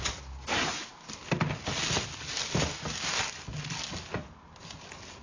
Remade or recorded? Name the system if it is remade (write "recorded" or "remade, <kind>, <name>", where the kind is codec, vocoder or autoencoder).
recorded